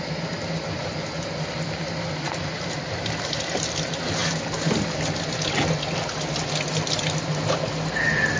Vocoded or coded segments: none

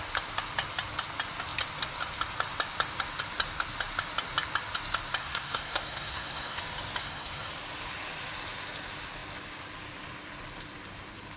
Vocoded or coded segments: 5.2-6.6 (codec, SNAC); 7.0-7.5

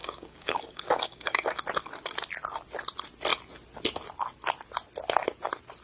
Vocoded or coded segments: 0.0-1.6 (codec, DAC)

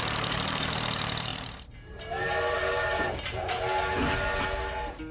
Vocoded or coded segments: 0.0-4.0 (vocoder, BigVGAN v2)

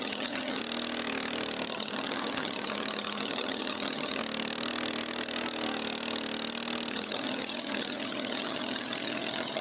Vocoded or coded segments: 0.0-0.6 (vocoder, HiFi-GAN); 1.7-4.2; 6.9-9.6

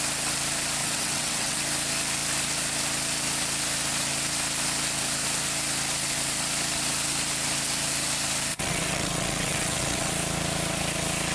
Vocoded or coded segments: 0.8-1.6 (vocoder, WaveNeXt); 8.5-10.1